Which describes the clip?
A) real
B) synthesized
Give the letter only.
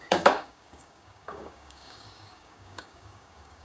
B